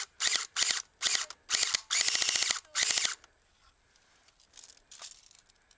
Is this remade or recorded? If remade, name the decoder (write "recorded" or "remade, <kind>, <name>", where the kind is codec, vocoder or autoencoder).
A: recorded